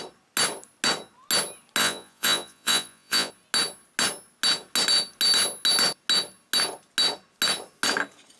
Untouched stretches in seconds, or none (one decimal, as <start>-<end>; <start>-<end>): 0.0-1.8; 3.3-8.4